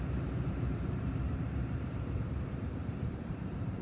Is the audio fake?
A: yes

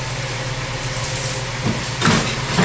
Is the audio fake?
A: no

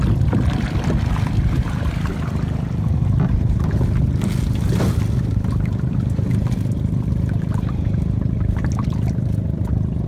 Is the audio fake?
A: no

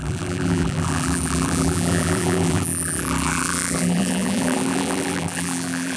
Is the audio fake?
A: yes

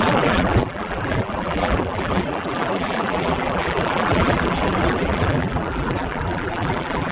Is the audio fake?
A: yes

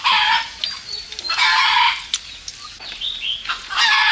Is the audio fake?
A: no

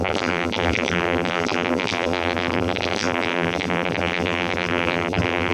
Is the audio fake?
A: yes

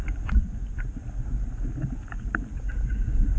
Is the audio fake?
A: no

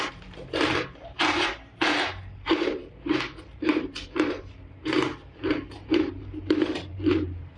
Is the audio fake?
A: yes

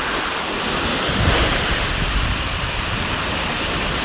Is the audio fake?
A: yes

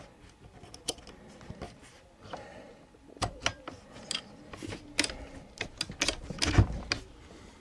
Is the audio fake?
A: no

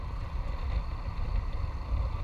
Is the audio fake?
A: no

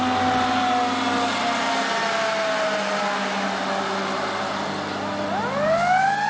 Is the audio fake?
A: no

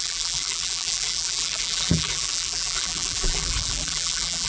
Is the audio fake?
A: yes